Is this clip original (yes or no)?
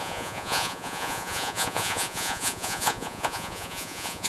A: no